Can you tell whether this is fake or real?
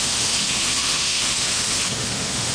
fake